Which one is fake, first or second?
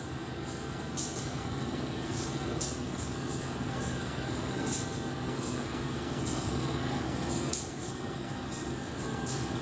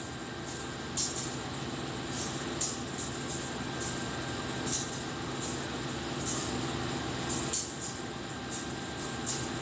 first